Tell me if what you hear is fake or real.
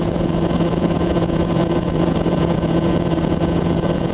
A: fake